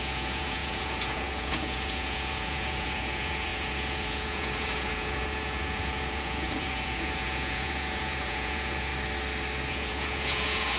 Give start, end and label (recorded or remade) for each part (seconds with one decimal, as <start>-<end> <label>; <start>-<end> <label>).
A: 0.0-8.9 remade; 8.9-9.7 recorded; 9.7-10.8 remade